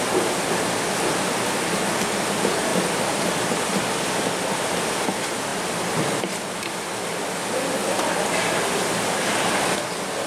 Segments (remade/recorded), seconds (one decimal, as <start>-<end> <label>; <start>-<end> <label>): 0.0-10.3 recorded